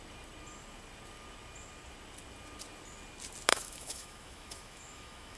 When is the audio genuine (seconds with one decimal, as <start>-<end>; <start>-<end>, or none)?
0.0-3.5